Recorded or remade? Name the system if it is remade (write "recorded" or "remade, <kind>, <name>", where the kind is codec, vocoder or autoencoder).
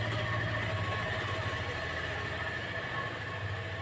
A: recorded